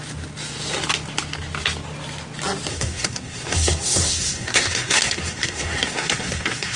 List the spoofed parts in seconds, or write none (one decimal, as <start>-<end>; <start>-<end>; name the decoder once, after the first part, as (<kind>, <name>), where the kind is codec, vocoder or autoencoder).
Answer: 2.7-6.8 (codec, SNAC)